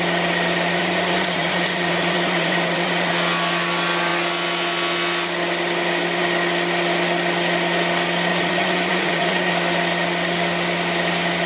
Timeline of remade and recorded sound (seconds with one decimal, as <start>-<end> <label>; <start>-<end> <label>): 0.0-0.8 recorded; 0.8-3.1 remade; 3.1-8.3 recorded; 8.3-9.5 remade; 9.5-11.5 recorded